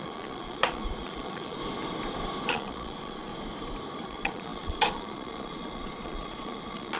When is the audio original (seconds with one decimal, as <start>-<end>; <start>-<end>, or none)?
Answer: 1.6-2.5; 3.3-4.0